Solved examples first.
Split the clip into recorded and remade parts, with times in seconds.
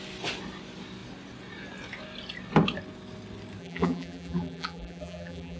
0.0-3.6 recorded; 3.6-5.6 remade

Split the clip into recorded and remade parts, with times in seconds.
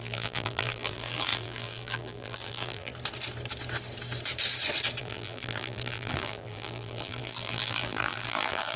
0.0-2.9 remade; 2.9-5.0 recorded; 5.0-8.8 remade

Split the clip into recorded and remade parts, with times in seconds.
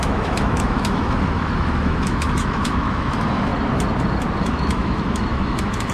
0.0-3.5 remade; 3.5-4.4 recorded; 4.4-5.9 remade